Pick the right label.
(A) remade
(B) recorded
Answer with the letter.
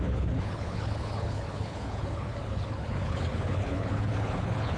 A